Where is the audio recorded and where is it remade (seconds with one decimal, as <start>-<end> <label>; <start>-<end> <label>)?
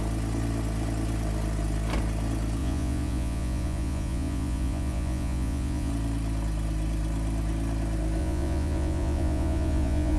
0.0-2.6 recorded; 2.6-5.9 remade; 5.9-8.2 recorded; 8.2-10.2 remade